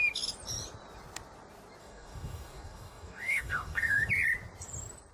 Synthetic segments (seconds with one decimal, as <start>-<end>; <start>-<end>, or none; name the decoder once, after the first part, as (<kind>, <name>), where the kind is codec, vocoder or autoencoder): 1.8-4.1 (codec, DAC)